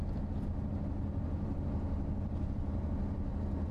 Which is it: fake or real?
real